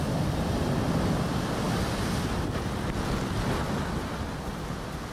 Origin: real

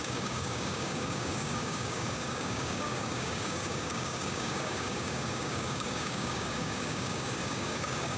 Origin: fake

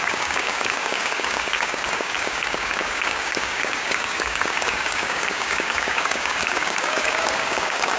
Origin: fake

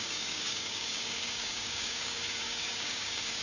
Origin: fake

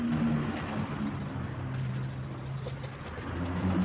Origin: real